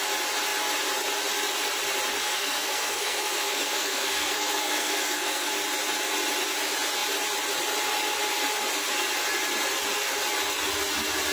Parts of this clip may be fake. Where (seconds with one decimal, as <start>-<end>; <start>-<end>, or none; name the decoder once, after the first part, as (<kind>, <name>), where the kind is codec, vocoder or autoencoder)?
2.2-5.5 (codec, SNAC)